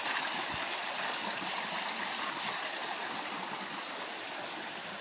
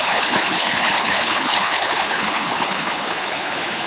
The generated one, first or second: second